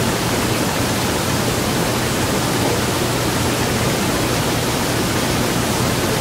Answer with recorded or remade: recorded